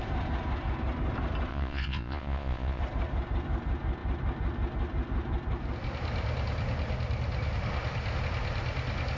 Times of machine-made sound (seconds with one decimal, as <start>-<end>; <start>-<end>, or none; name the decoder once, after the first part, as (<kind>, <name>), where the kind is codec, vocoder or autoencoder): 1.5-2.8 (vocoder, Vocos)